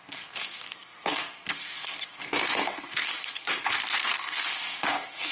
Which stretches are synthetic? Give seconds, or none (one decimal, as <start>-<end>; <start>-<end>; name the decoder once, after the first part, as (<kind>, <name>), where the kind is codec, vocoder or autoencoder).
0.0-5.3 (codec, SNAC)